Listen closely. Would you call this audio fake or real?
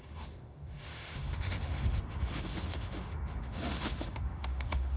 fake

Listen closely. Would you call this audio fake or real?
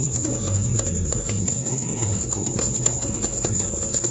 fake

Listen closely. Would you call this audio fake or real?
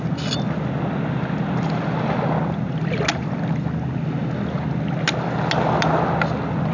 real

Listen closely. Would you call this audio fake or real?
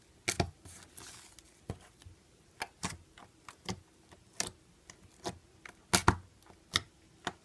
real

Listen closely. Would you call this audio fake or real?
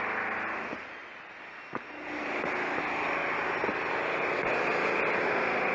real